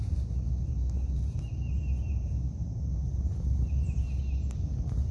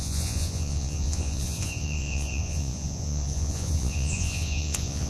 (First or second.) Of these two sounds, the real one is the first